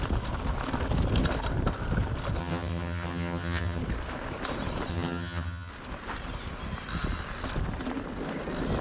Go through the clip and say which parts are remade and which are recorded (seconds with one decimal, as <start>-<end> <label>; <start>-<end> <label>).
0.0-2.4 recorded; 2.4-3.8 remade; 3.8-4.9 recorded; 4.9-5.7 remade; 5.7-8.8 recorded